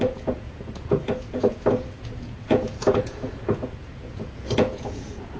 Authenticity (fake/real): fake